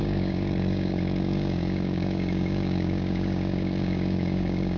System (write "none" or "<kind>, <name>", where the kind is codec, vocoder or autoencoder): codec, DAC